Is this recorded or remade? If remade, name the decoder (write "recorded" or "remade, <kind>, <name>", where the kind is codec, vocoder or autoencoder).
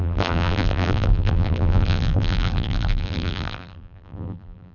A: remade, vocoder, BigVGAN v2